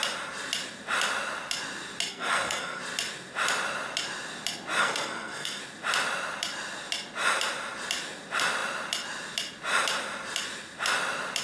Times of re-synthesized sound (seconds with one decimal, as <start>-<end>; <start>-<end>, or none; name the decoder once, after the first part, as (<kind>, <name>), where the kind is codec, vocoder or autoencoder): 2.1-2.8 (codec, SNAC); 4.8-5.6